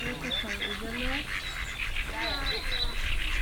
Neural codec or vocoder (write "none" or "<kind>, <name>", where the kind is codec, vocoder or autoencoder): none